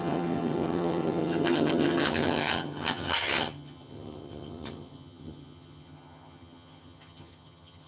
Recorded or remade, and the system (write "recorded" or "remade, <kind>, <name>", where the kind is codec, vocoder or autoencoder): remade, vocoder, HiFi-GAN